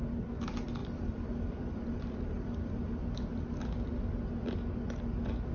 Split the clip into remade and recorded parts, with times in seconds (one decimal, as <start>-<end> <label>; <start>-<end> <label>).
0.0-0.8 recorded; 0.8-4.1 remade; 4.1-5.5 recorded